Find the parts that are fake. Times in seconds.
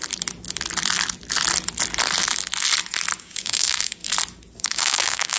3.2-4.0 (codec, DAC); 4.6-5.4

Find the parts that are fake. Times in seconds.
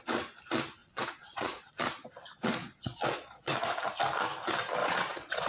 0.8-1.7 (vocoder, Vocos); 2.6-3.5; 4.8-5.5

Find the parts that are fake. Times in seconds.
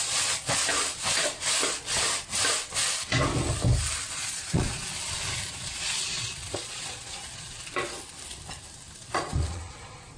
0.0-0.6 (vocoder, Vocos); 4.1-4.8; 5.5-7.6; 9.0-10.2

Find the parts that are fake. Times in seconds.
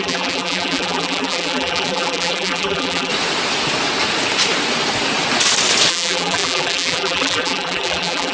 0.0-3.1 (vocoder, BigVGAN v2); 5.9-8.3